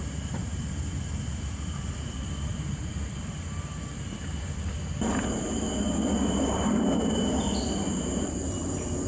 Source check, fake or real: real